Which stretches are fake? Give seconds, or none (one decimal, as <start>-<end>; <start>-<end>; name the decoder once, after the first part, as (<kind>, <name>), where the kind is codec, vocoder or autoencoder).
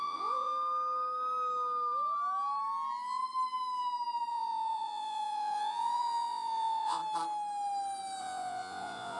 0.0-0.5 (vocoder, Vocos); 4.3-7.0; 8.2-9.2